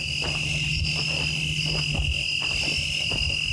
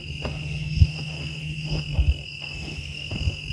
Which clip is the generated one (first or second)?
second